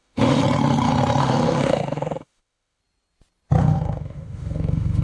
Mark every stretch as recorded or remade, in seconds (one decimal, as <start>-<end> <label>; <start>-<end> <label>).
0.0-0.4 remade; 0.4-1.2 recorded; 1.2-2.8 remade; 2.8-3.6 recorded; 3.6-5.0 remade